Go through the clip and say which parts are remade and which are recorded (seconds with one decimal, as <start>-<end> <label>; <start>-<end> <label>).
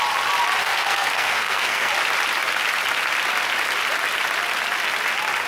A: 0.0-0.6 recorded; 0.6-1.9 remade; 1.9-5.5 recorded